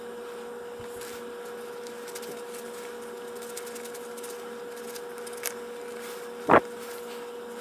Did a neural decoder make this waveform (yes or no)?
no